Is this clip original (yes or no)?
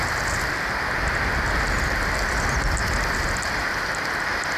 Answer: yes